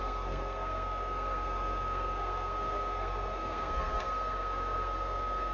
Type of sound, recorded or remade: remade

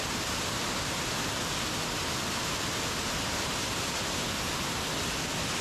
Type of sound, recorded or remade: recorded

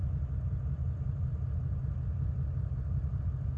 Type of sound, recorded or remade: recorded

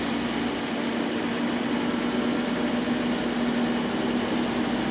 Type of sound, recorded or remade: recorded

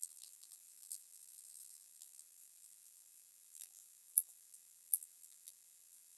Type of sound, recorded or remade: remade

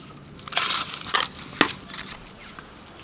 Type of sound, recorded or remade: recorded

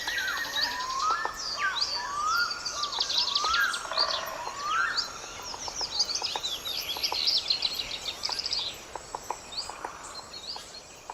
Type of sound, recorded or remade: recorded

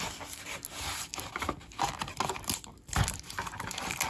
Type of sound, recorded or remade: recorded